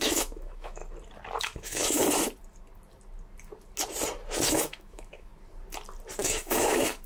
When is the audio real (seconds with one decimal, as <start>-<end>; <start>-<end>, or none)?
0.8-1.4; 2.0-4.5; 5.3-6.2